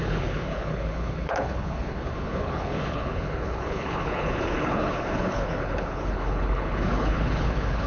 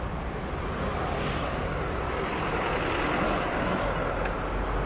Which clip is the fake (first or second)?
first